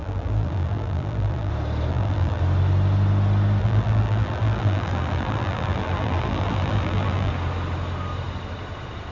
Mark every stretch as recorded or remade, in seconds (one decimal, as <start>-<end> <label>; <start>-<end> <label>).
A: 0.0-1.5 remade; 1.5-1.9 recorded; 1.9-2.4 remade; 2.4-3.6 recorded; 3.6-7.3 remade; 7.3-9.1 recorded